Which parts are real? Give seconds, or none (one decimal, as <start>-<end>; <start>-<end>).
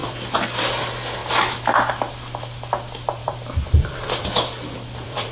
0.6-3.2